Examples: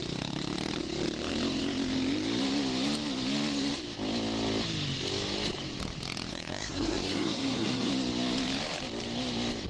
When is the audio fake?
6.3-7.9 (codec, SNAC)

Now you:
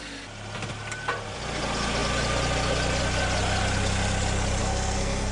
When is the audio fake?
4.6-5.3 (codec, SNAC)

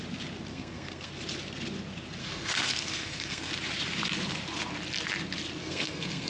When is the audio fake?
0.5-1.1 (codec, SNAC); 2.2-3.5; 5.6-6.3

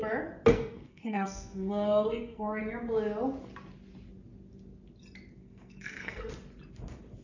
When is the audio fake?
0.5-2.6 (codec, SNAC); 5.4-6.3